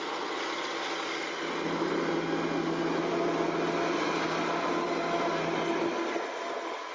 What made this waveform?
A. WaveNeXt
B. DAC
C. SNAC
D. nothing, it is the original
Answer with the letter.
D